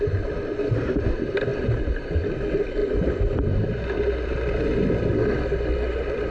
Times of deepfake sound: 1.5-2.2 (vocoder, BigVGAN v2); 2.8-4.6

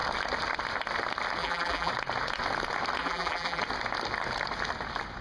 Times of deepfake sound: 1.4-1.9 (vocoder, BigVGAN v2); 3.0-3.6

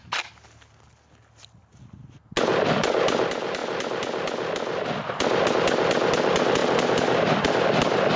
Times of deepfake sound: 6.6-7.4 (vocoder, BigVGAN v2)

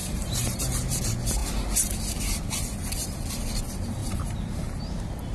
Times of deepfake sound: 0.0-0.6 (vocoder, BigVGAN v2); 4.0-4.8

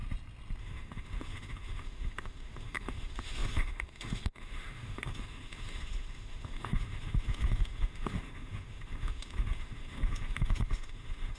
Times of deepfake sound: 0.6-11.4 (autoencoder, DAC-VAE)